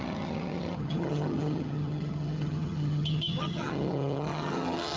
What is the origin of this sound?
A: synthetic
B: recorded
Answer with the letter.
A